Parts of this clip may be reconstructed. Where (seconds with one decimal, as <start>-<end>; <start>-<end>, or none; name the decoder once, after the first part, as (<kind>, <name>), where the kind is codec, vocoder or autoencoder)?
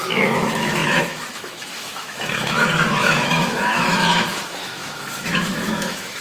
0.0-6.2 (autoencoder, DAC-VAE)